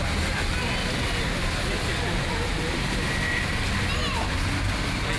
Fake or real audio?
real